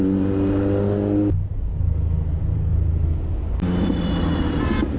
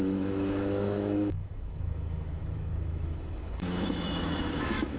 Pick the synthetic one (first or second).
second